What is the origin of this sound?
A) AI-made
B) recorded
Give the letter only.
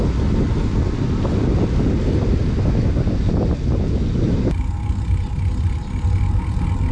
B